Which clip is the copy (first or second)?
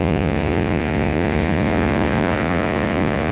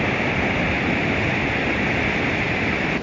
first